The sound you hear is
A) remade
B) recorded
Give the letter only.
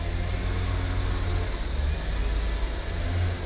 B